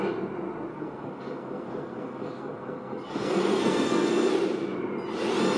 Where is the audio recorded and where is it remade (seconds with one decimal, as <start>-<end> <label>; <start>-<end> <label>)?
0.0-0.7 recorded; 0.7-4.1 remade; 4.1-5.6 recorded